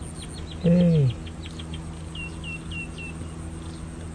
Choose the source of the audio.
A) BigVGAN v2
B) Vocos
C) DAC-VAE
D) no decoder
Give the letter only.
D